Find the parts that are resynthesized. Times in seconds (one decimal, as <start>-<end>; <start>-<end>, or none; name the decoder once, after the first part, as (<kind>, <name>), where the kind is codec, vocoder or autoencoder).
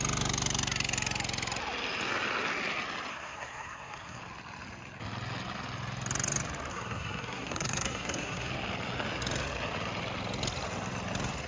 3.1-4.2 (codec, SNAC); 6.7-8.5